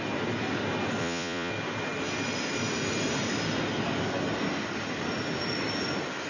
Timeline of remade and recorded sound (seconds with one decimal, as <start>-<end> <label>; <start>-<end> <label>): 0.0-1.0 recorded; 1.0-1.5 remade; 1.5-6.3 recorded